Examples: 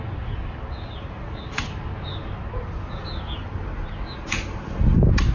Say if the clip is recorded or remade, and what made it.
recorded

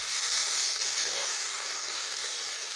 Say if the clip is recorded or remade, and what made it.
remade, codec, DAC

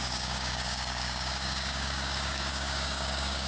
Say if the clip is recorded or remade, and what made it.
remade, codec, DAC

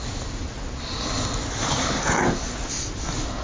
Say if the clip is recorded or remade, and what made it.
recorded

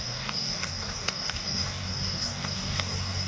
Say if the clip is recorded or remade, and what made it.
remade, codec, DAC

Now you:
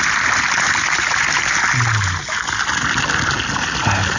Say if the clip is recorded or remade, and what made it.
recorded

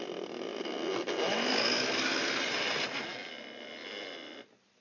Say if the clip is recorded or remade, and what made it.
recorded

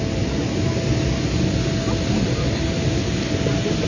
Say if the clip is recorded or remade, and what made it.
recorded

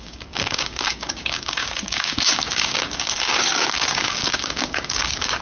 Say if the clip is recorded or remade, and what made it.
remade, codec, DAC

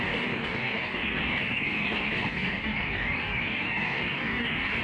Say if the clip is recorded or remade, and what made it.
remade, codec, DAC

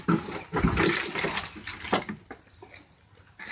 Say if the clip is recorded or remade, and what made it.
recorded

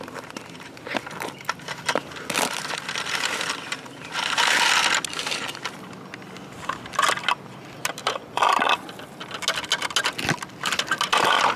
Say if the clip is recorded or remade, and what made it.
recorded